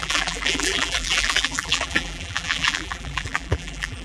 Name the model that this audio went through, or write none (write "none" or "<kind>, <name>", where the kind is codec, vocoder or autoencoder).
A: vocoder, BigVGAN v2